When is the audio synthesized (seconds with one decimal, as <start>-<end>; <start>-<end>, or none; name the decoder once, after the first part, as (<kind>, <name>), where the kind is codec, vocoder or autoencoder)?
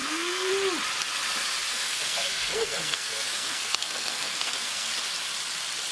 0.0-0.5 (codec, SNAC); 1.7-4.9